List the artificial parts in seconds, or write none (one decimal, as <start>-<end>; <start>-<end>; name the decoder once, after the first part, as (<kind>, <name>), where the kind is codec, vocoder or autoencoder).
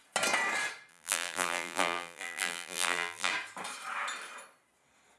0.9-3.3 (vocoder, BigVGAN v2)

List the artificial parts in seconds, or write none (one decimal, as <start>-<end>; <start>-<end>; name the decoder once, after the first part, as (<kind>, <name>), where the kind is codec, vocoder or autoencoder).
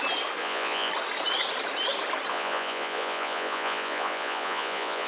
0.4-0.9 (vocoder, Vocos); 2.3-5.1